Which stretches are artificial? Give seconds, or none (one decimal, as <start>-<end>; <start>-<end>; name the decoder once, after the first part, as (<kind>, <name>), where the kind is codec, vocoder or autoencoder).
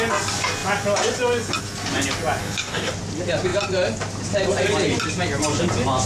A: 2.4-2.9 (codec, DAC)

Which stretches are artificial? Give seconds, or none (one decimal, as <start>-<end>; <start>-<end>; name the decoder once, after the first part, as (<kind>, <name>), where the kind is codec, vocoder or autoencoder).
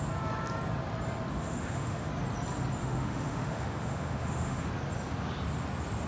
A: 1.3-2.1 (autoencoder, DAC-VAE); 2.8-4.7